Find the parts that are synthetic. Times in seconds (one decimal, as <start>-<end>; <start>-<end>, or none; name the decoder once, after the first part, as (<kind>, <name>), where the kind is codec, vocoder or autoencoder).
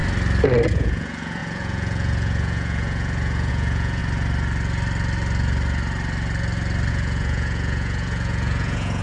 0.7-4.0 (vocoder, Vocos); 6.9-9.0